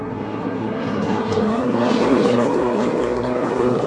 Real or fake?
fake